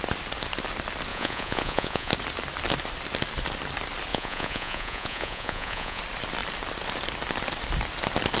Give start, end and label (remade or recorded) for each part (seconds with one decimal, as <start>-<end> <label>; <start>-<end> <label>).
0.0-1.1 recorded; 1.1-2.1 remade; 2.1-4.1 recorded; 4.1-6.0 remade; 6.0-8.4 recorded

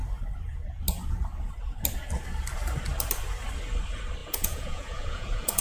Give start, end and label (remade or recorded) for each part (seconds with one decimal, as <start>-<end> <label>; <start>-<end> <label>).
0.0-4.2 recorded; 4.2-5.6 remade

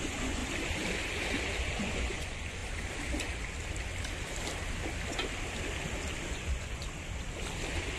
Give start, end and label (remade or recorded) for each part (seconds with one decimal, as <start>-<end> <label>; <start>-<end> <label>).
0.0-0.4 remade; 0.4-1.6 recorded; 1.6-2.6 remade; 2.6-6.3 recorded; 6.3-6.8 remade; 6.8-8.0 recorded

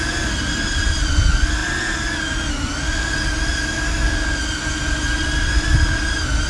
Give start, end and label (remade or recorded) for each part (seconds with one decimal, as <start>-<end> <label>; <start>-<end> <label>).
0.0-6.5 recorded

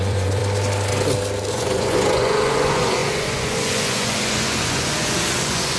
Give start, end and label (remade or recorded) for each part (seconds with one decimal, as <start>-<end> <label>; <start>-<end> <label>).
0.0-0.4 remade; 0.4-1.5 recorded; 1.5-5.8 remade